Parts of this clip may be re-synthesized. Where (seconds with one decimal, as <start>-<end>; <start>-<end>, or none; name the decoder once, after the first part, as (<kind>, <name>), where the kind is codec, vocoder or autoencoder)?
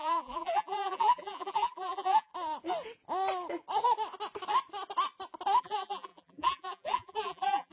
0.0-2.3 (vocoder, BigVGAN v2); 5.6-7.7